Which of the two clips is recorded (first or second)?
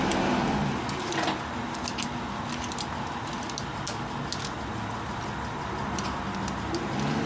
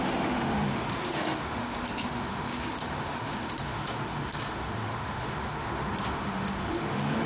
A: first